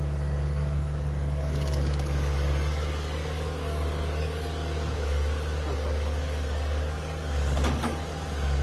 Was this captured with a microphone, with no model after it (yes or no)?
no